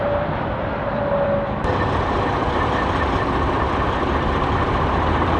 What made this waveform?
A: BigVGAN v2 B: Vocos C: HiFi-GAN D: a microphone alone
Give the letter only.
A